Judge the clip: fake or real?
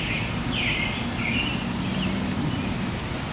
real